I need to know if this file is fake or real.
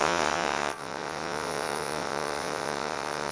fake